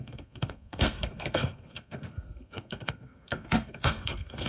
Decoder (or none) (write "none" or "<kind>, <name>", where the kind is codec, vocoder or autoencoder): codec, SNAC